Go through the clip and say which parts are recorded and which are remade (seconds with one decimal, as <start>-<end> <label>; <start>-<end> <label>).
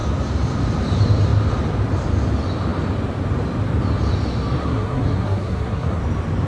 0.0-4.6 recorded; 4.6-6.0 remade; 6.0-6.5 recorded